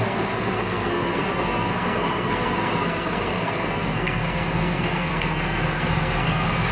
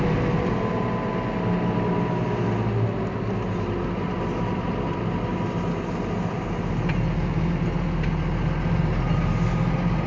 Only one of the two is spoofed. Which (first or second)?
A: first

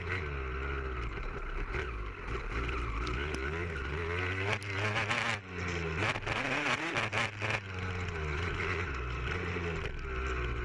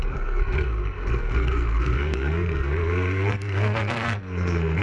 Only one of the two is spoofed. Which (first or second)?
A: second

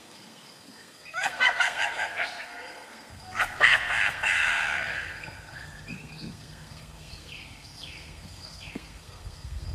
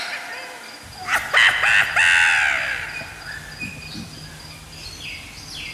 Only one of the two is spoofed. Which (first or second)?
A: first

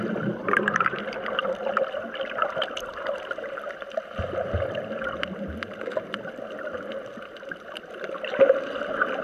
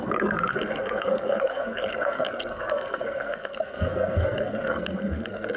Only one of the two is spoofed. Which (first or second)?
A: second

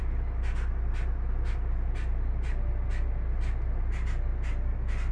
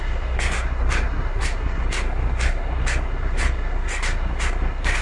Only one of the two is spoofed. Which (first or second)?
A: second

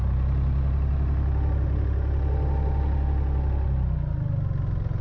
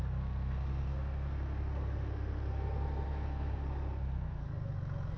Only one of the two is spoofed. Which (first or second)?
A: second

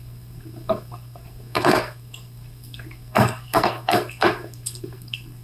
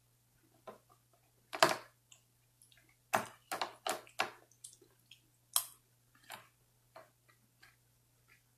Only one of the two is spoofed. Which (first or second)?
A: first